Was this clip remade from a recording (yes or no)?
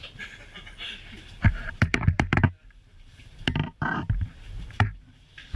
yes